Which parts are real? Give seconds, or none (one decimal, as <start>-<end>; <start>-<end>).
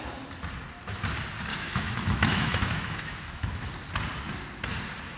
0.0-1.5; 3.7-5.2